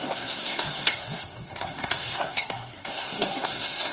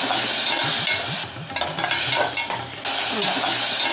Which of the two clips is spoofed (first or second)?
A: first